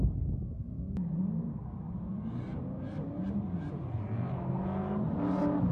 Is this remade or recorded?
recorded